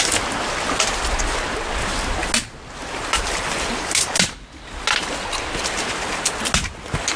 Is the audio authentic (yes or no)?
yes